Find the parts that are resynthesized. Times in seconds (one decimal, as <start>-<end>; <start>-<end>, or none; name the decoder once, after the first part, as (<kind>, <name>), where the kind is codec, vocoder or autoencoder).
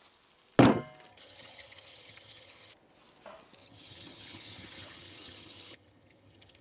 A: 1.1-2.7 (vocoder, HiFi-GAN); 3.6-6.6